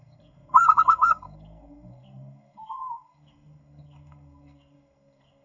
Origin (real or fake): fake